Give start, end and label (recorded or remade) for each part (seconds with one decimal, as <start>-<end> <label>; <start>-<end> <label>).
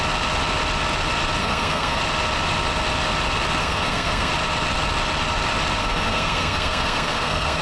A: 0.0-1.4 recorded; 1.4-2.0 remade; 2.0-3.6 recorded; 3.6-4.3 remade; 4.3-5.8 recorded; 5.8-7.6 remade